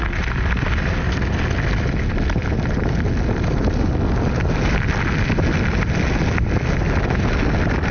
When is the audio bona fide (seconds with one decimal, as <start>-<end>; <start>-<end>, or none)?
0.0-7.9